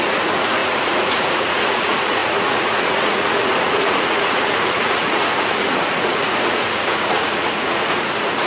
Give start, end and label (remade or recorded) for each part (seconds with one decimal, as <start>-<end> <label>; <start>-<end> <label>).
0.0-8.5 remade